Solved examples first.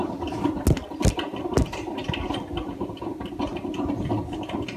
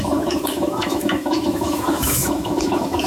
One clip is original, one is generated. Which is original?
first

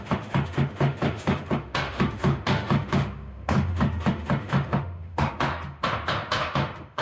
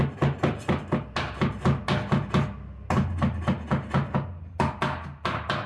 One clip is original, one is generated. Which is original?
second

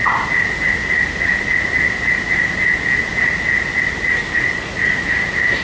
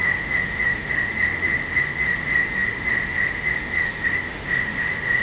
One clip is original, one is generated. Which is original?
first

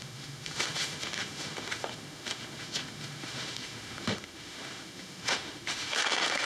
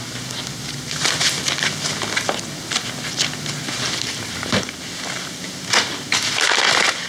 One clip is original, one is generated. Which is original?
second